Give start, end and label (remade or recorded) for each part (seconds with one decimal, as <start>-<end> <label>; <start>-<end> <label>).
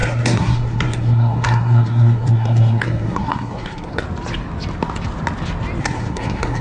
0.0-4.0 remade; 4.0-5.8 recorded; 5.8-6.6 remade